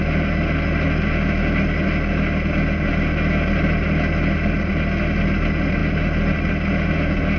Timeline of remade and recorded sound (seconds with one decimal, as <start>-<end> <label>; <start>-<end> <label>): 0.0-7.4 recorded